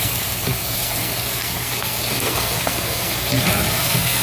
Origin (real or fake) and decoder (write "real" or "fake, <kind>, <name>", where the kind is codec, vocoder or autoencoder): fake, codec, SNAC